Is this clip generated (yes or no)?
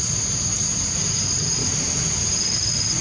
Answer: yes